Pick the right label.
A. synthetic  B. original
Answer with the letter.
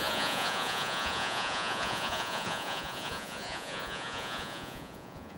A